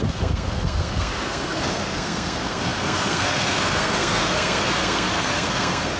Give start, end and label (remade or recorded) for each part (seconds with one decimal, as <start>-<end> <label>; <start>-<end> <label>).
0.0-6.0 remade